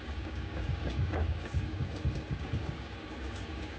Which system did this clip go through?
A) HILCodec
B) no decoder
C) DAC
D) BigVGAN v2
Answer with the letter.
C